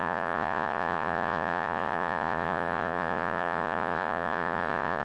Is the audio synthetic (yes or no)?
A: yes